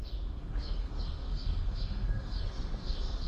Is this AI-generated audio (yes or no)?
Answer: yes